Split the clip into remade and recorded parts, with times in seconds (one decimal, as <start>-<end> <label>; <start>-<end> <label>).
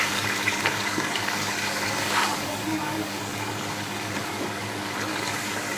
0.0-5.8 remade